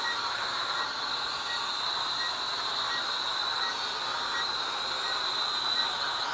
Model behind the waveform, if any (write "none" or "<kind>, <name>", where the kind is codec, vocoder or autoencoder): none